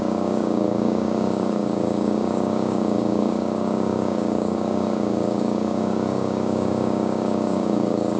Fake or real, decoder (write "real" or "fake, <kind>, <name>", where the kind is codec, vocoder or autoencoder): fake, codec, DAC